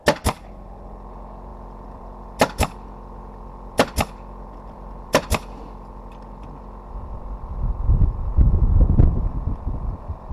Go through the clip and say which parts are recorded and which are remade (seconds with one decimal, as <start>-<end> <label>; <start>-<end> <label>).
0.0-1.5 recorded; 1.5-6.1 remade; 6.1-10.3 recorded